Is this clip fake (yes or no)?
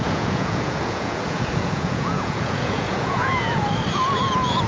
yes